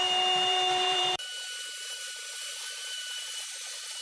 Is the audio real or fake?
fake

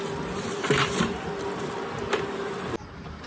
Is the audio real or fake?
real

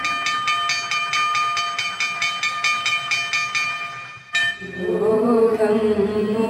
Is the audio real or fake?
real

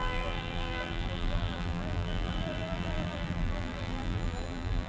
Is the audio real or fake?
fake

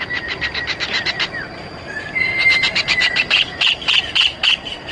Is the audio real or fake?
fake